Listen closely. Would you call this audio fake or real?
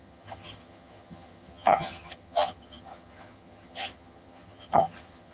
fake